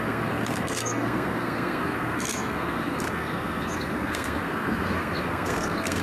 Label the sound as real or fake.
fake